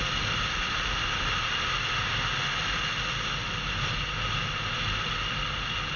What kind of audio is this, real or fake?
real